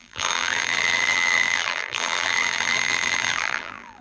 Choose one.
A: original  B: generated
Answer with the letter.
B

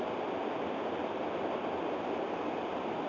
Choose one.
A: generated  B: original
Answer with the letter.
B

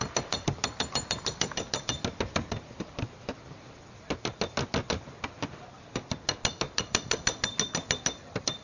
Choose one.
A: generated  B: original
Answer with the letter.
B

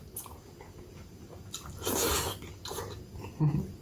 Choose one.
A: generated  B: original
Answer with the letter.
B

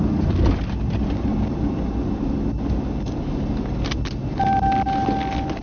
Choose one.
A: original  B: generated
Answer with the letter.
A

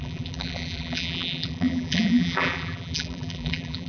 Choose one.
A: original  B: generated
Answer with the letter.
B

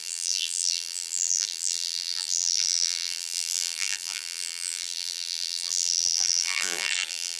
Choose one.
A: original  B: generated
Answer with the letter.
B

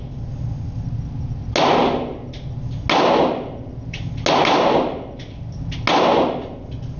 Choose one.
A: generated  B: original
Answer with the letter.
B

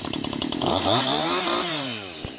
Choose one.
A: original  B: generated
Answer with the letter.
B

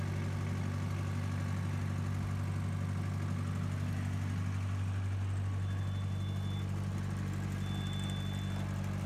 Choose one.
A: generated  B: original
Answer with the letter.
B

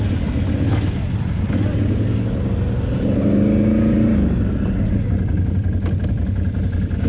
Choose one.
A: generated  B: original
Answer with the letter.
B